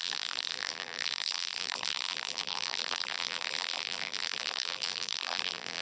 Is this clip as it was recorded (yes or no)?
no